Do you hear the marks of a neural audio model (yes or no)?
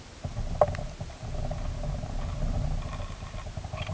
no